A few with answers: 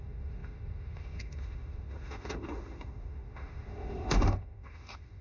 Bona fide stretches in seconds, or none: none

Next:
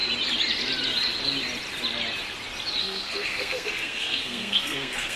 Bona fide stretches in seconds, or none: 0.0-2.8

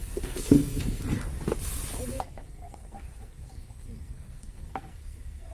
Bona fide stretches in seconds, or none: 1.0-2.1

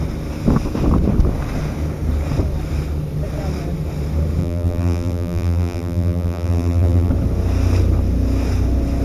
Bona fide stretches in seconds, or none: 0.0-4.4; 7.1-9.0

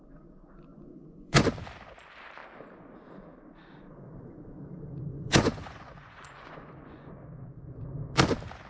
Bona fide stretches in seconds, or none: 0.0-0.7; 1.4-5.1; 7.1-8.7